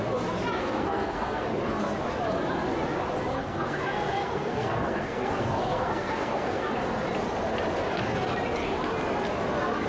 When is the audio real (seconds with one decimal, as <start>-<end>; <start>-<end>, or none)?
0.0-0.6; 1.5-3.3; 6.7-9.9